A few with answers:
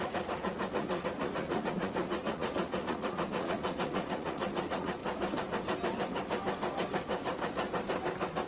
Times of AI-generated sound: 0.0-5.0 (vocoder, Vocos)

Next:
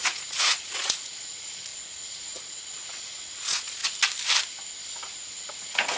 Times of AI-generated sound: 0.0-3.8 (vocoder, Vocos); 5.5-6.0

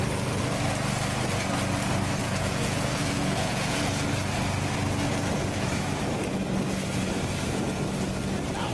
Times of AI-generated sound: 2.2-3.8 (vocoder, Vocos)

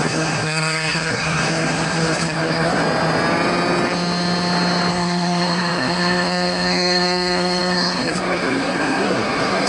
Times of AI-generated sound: 0.0-2.8 (codec, SNAC); 4.9-9.7